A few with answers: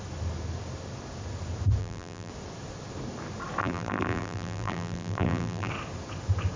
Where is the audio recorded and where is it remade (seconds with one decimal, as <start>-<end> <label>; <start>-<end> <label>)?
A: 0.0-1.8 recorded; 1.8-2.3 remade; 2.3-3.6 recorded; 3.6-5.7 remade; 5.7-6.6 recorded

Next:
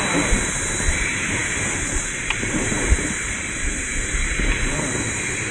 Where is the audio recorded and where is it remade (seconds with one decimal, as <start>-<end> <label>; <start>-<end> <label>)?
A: 0.0-5.5 remade

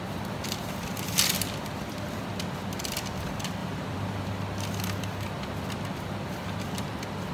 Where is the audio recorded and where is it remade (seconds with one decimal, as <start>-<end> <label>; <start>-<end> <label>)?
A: 0.0-3.6 recorded; 3.6-4.3 remade; 4.3-7.3 recorded

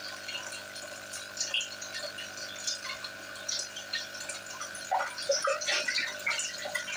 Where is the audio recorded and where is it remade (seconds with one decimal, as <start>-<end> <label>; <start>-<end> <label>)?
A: 0.0-2.7 recorded; 2.7-5.4 remade; 5.4-7.0 recorded

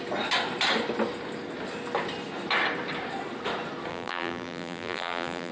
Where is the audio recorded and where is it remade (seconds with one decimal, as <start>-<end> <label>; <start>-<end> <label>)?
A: 0.0-3.9 recorded; 3.9-5.5 remade

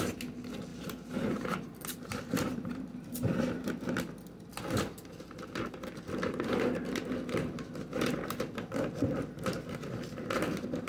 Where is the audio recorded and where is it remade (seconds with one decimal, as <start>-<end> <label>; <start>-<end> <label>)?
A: 0.0-0.7 recorded; 0.7-3.7 remade; 3.7-10.9 recorded

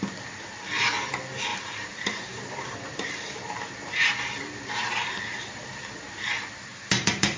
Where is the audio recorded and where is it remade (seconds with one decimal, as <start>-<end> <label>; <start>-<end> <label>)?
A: 0.0-1.5 recorded; 1.5-3.7 remade; 3.7-6.7 recorded; 6.7-7.4 remade